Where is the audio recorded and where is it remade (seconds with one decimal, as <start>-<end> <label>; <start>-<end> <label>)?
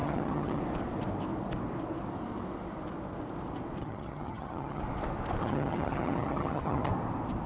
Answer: 0.0-0.6 remade; 0.6-3.8 recorded; 3.8-4.8 remade; 4.8-5.4 recorded; 5.4-6.9 remade; 6.9-7.5 recorded